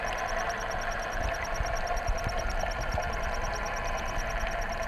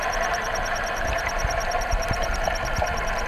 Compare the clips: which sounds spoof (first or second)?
second